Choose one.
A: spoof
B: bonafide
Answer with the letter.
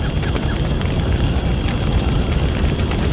B